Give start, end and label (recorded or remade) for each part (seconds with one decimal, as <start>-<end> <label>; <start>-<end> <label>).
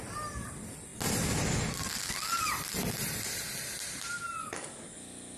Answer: 0.0-4.4 recorded; 4.4-5.4 remade